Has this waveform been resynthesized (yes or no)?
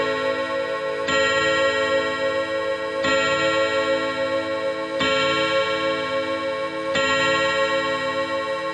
no